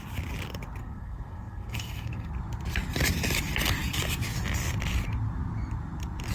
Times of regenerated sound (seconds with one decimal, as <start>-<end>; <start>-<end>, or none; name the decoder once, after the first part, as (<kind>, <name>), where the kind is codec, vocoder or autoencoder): 0.8-2.3 (codec, SNAC)

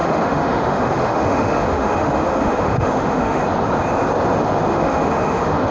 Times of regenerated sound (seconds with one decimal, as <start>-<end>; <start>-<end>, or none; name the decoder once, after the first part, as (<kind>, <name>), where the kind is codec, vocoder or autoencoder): 0.0-3.4 (autoencoder, DAC-VAE); 4.7-5.7

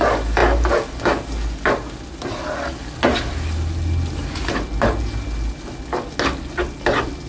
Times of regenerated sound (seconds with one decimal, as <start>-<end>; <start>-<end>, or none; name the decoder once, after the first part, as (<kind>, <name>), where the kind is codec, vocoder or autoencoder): none

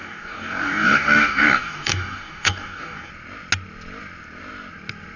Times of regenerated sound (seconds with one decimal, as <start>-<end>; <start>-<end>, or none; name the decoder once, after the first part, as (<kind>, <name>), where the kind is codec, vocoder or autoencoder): 0.0-3.1 (codec, DAC)

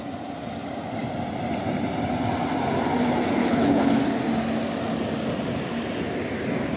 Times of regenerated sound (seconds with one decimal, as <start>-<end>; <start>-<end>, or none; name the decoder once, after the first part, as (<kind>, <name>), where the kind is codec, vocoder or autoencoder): 3.4-4.0 (codec, HILCodec)